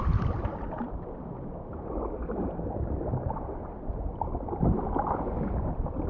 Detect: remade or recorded recorded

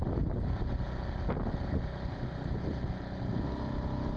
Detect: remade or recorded recorded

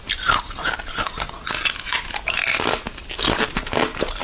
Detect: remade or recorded recorded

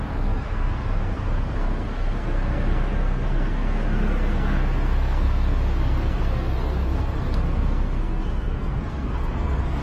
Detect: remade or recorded remade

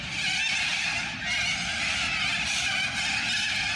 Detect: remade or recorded recorded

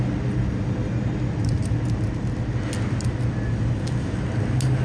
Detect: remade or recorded recorded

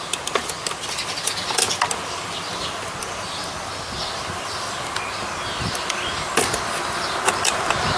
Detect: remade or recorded remade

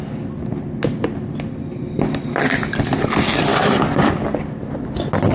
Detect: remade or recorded recorded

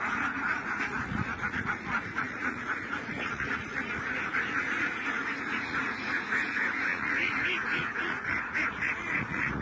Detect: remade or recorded remade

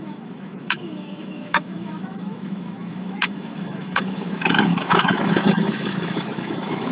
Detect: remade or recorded remade